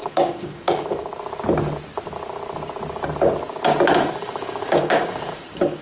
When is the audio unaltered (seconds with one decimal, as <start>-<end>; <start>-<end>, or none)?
1.1-4.0